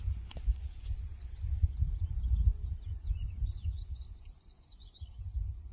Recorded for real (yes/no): no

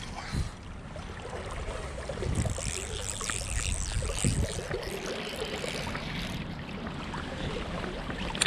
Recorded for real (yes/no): yes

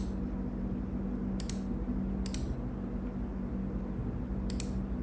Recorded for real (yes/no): yes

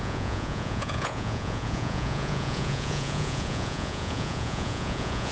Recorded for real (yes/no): no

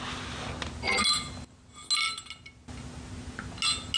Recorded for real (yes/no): yes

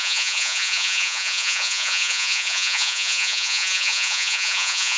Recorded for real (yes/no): no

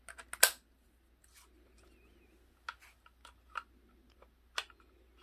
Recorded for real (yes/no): yes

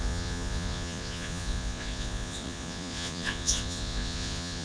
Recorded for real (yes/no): no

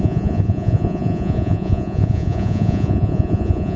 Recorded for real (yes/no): no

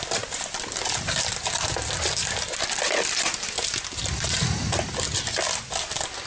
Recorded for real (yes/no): yes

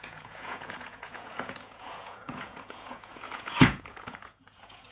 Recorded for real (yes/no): no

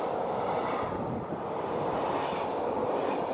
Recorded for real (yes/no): yes